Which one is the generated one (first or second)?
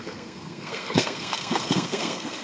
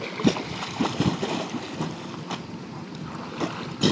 first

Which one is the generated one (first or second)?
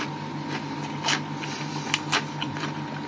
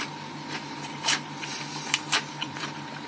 second